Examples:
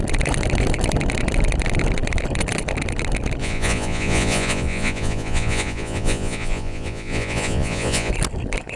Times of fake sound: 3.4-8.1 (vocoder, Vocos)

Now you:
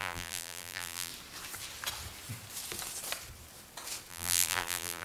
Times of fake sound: 0.0-1.1 (vocoder, BigVGAN v2); 4.1-5.0

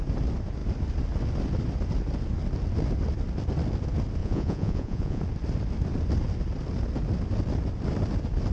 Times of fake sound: 4.2-5.2 (vocoder, Vocos)

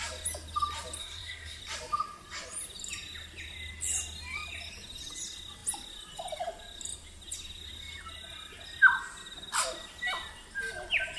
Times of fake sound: 1.0-1.6 (codec, SNAC)

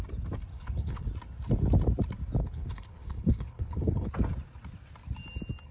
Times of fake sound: 0.5-1.1 (codec, HILCodec); 2.4-4.1

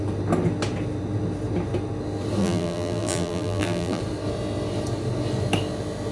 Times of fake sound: 2.4-4.0 (vocoder, BigVGAN v2)

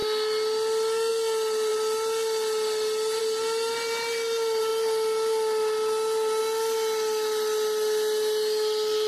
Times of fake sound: none

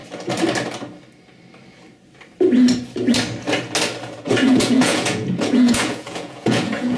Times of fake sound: 4.2-7.0 (vocoder, Vocos)